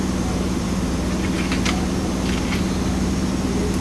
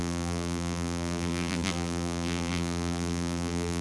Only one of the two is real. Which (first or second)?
first